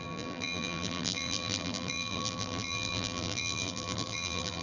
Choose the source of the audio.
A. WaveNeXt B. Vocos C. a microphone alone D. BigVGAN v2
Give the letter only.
D